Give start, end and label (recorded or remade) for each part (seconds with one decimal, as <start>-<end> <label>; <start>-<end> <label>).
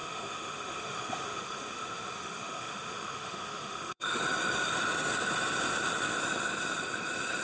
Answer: 0.0-4.2 remade; 4.2-7.4 recorded